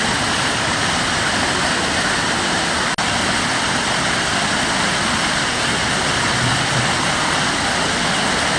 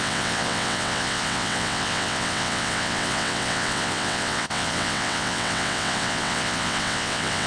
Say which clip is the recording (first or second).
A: first